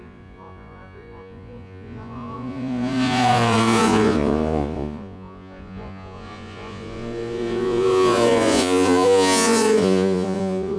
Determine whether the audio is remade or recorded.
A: remade